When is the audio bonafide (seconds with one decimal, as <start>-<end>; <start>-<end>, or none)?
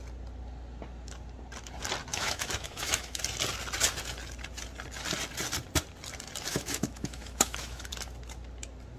0.0-2.1; 3.2-6.5; 7.9-9.0